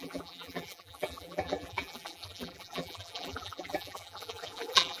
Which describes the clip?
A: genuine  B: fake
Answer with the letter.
B